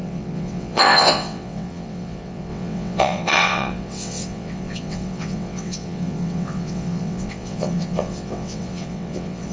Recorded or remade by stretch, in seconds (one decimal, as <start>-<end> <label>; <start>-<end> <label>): 0.0-9.5 remade